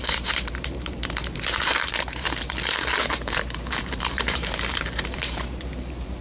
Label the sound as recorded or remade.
remade